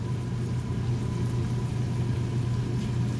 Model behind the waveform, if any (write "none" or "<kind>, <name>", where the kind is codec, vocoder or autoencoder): none